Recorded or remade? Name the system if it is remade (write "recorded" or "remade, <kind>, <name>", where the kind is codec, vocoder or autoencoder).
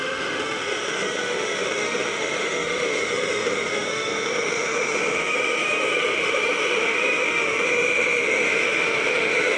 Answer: remade, autoencoder, DAC-VAE